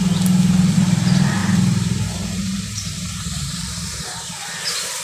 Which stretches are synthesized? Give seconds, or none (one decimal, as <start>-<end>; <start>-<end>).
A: 1.4-4.4